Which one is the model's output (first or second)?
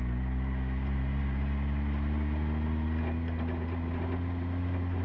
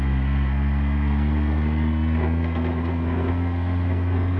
second